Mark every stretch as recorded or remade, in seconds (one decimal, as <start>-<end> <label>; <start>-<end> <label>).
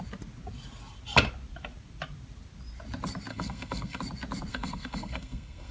0.0-3.3 recorded; 3.3-4.0 remade; 4.0-4.5 recorded; 4.5-5.7 remade